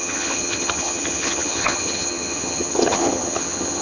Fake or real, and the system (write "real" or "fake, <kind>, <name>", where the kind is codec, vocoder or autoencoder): fake, vocoder, HiFi-GAN